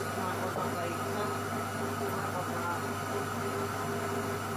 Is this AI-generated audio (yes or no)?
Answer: no